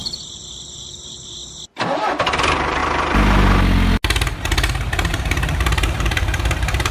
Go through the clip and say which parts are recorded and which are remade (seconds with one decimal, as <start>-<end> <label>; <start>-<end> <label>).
0.0-1.4 remade; 1.4-2.2 recorded; 2.2-2.8 remade; 2.8-5.1 recorded; 5.1-6.9 remade